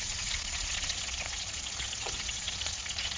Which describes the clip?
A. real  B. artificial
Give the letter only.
B